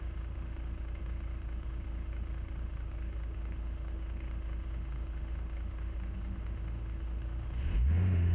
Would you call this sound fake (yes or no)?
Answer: yes